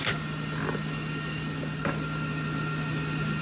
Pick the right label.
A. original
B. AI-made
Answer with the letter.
A